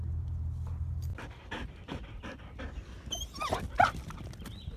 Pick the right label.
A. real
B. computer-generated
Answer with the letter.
A